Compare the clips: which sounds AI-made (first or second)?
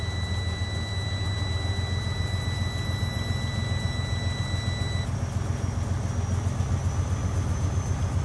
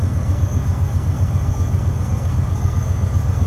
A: second